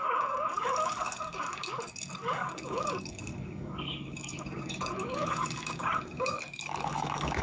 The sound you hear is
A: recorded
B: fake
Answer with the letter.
B